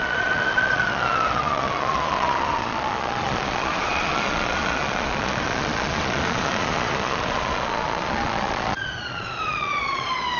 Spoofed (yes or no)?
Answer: yes